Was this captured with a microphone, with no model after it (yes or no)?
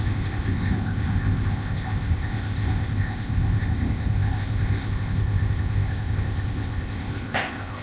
no